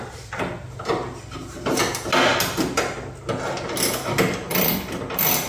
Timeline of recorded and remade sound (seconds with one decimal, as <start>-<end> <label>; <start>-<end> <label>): 0.0-5.5 recorded